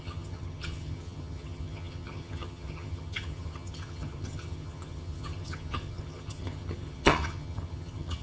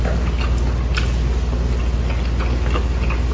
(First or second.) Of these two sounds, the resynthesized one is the first